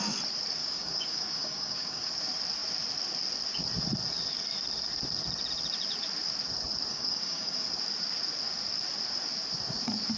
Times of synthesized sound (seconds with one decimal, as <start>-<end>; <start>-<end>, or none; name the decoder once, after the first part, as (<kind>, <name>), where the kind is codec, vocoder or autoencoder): 0.6-2.1 (codec, DAC); 6.9-7.7